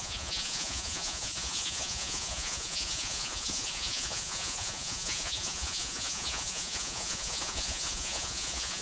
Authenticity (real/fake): fake